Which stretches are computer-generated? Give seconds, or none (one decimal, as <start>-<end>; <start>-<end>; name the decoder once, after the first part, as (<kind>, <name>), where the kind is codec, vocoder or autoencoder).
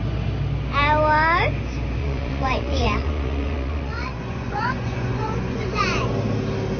2.0-6.1 (vocoder, Vocos)